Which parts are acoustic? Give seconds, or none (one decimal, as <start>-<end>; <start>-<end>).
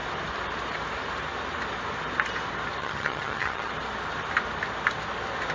0.0-2.8; 3.7-5.5